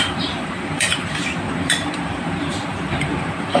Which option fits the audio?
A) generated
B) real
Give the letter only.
A